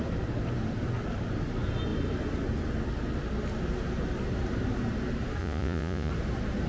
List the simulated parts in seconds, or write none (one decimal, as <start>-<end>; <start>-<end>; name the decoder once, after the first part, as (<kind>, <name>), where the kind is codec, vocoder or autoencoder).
5.4-6.1 (vocoder, Vocos)